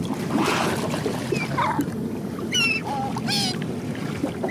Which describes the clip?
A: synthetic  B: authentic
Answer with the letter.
B